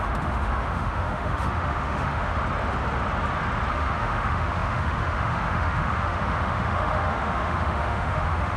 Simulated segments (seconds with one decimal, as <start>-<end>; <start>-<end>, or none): 0.0-2.4; 3.7-8.6